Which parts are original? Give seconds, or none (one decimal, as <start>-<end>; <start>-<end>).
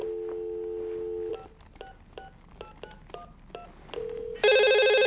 0.0-5.1